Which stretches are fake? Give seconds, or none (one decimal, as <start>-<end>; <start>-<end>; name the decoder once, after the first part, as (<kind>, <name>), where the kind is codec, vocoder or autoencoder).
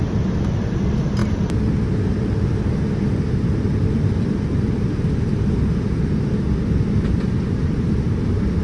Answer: 0.0-1.2 (vocoder, BigVGAN v2); 2.0-8.6